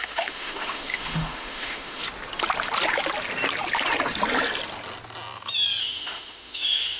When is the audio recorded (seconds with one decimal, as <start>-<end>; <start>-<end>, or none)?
2.0-5.8